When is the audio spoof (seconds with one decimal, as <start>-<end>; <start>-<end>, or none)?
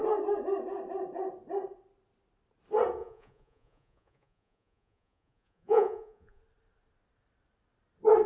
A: 3.0-6.4